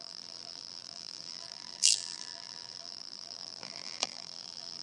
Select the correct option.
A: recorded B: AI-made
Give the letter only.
B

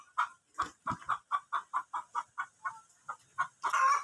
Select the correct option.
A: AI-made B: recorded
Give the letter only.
B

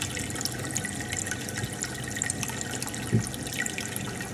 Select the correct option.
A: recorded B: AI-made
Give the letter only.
A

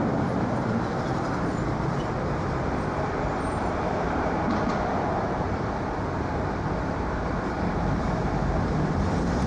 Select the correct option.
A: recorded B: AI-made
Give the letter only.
B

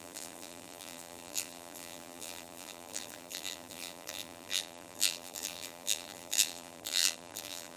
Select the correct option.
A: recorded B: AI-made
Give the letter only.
B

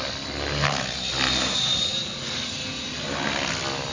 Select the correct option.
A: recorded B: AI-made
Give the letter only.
A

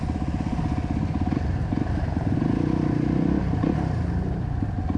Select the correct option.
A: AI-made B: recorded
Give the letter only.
B